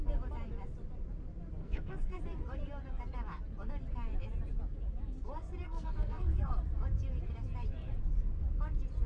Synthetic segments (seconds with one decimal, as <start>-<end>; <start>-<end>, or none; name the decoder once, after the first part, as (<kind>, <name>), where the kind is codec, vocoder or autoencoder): 1.6-2.2 (codec, SNAC); 5.6-6.5